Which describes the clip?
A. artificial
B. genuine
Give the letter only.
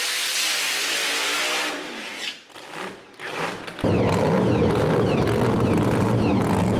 B